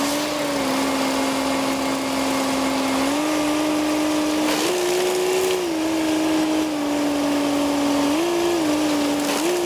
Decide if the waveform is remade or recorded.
recorded